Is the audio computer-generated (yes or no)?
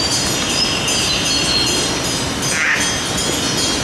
no